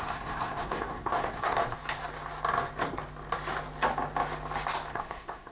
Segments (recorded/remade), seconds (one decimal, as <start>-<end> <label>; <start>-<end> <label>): 0.0-1.6 remade; 1.6-4.9 recorded; 4.9-5.5 remade